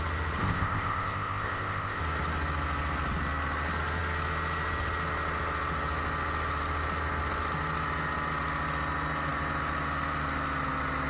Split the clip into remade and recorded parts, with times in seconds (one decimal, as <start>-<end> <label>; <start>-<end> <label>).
0.0-0.4 recorded; 0.4-2.0 remade; 2.0-11.1 recorded